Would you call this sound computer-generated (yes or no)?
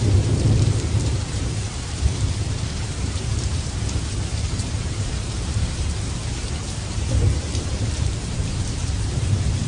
yes